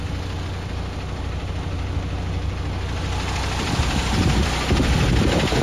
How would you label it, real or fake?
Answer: real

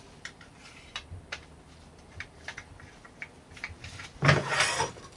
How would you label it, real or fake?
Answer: fake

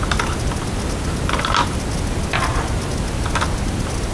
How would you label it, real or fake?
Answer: real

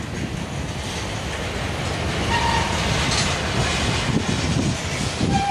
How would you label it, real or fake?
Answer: real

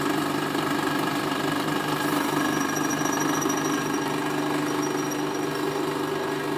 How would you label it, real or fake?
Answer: real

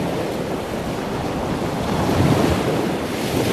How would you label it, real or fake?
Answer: real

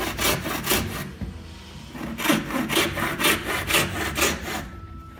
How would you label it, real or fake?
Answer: real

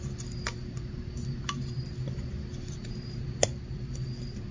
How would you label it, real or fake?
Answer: real